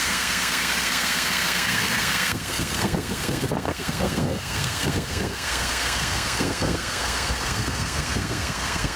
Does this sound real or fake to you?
fake